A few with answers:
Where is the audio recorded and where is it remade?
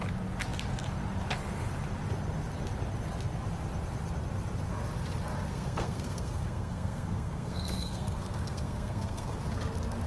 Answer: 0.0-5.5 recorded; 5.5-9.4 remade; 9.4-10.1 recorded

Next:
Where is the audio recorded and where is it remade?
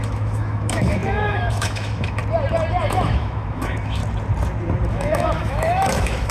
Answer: 0.0-2.2 remade; 2.2-2.8 recorded; 2.8-4.0 remade; 4.0-4.9 recorded; 4.9-6.3 remade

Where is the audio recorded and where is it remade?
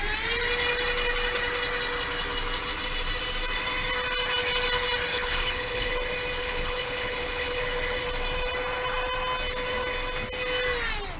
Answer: 0.0-5.1 recorded; 5.1-5.9 remade; 5.9-6.4 recorded; 6.4-7.6 remade; 7.6-11.2 recorded